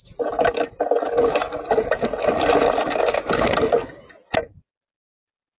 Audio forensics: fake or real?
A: real